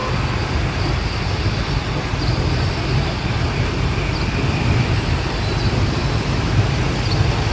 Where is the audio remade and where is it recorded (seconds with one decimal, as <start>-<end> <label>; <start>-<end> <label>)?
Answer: 0.0-7.5 recorded